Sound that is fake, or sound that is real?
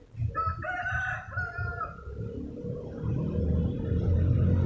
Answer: real